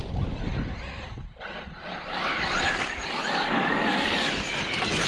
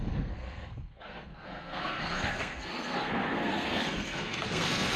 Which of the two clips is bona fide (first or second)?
first